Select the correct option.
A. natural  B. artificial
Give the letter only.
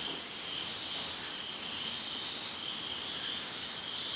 A